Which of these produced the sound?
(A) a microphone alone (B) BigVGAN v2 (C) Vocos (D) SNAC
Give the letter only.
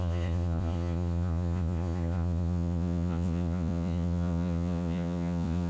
C